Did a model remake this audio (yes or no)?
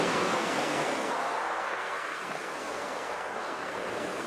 yes